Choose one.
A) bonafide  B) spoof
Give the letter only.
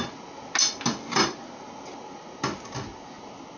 A